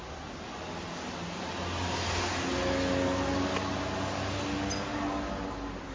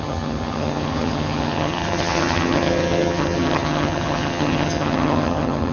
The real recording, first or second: first